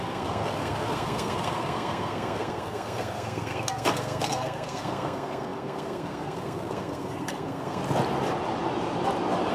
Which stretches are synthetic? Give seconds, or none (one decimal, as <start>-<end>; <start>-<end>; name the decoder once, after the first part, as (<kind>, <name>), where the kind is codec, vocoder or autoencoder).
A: 0.0-7.8 (codec, SNAC)